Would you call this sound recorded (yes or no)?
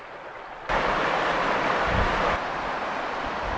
yes